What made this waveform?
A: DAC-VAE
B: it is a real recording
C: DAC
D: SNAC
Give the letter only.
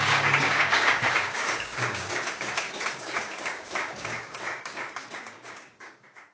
C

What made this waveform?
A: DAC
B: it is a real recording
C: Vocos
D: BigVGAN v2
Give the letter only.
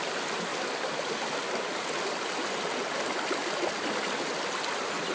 B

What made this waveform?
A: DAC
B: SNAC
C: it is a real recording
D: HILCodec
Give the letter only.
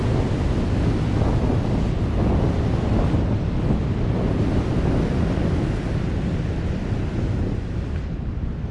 C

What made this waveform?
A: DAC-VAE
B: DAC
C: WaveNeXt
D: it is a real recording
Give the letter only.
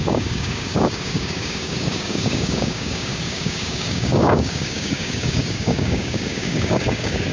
B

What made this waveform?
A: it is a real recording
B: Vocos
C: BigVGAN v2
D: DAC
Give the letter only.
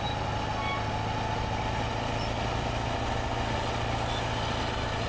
A